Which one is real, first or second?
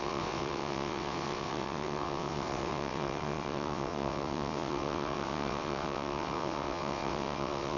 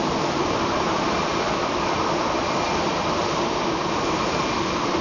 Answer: second